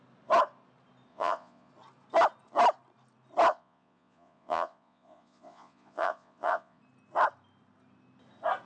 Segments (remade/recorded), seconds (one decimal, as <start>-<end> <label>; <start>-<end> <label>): 0.0-1.1 recorded; 1.1-1.7 remade; 1.7-3.5 recorded; 3.5-6.8 remade; 6.8-8.7 recorded